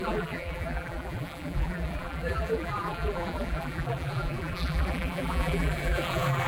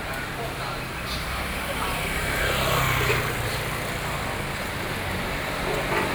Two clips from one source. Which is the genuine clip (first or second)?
second